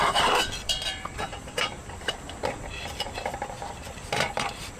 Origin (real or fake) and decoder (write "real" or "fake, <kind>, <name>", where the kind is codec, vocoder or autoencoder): fake, vocoder, BigVGAN v2